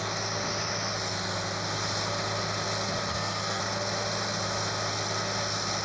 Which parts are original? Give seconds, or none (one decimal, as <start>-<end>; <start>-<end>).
0.0-3.1; 3.6-5.8